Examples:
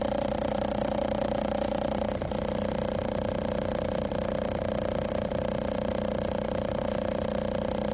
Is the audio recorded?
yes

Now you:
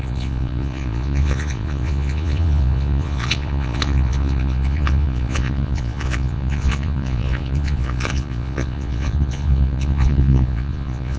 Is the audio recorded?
no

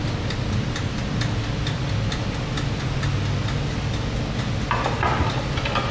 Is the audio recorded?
yes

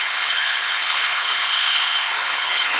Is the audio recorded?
no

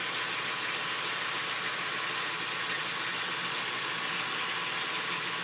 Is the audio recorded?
yes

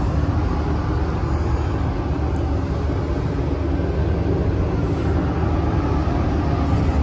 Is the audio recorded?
yes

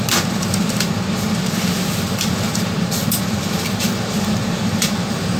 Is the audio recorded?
no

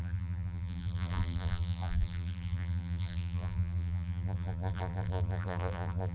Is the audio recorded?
no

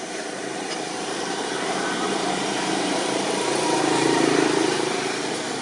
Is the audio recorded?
no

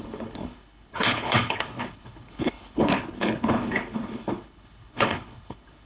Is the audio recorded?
no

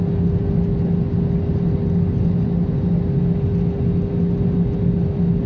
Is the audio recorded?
yes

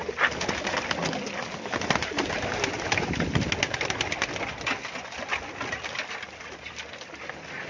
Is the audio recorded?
yes